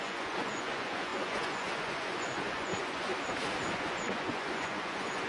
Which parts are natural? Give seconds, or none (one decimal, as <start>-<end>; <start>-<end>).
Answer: 3.1-3.7